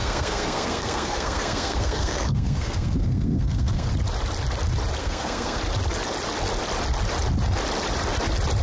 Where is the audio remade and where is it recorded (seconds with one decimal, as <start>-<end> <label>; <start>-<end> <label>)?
0.0-3.9 remade; 3.9-5.0 recorded; 5.0-5.6 remade; 5.6-8.6 recorded